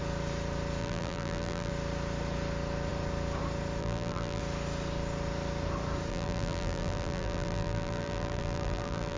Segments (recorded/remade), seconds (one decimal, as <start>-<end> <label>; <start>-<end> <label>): 0.0-0.8 recorded; 0.8-1.7 remade; 1.7-3.8 recorded; 3.8-4.4 remade; 4.4-6.1 recorded; 6.1-9.2 remade